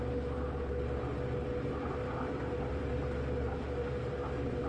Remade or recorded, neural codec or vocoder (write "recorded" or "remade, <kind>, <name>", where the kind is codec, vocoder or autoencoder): recorded